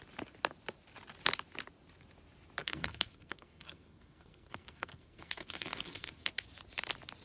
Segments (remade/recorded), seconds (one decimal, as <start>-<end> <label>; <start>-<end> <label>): 0.0-2.6 recorded; 2.6-6.3 remade; 6.3-7.2 recorded